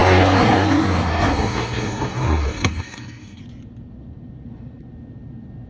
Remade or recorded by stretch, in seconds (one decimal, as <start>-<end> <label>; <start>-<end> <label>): 0.0-3.4 remade; 3.4-5.7 recorded